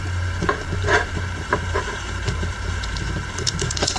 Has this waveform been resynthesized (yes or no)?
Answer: yes